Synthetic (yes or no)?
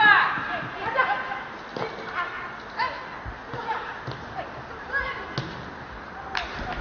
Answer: no